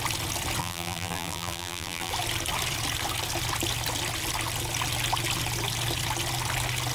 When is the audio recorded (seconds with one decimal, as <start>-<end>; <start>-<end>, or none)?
0.0-0.6; 2.1-6.9